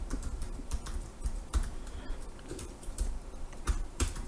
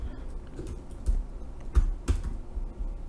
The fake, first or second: first